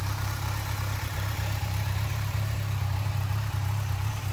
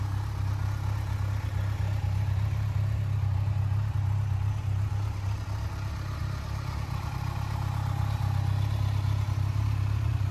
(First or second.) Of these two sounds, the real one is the second